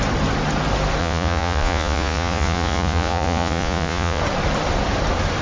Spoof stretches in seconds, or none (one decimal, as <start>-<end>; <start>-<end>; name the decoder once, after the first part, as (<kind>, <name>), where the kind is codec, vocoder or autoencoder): 1.0-4.2 (vocoder, Vocos)